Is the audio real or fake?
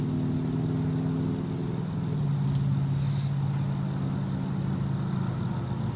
real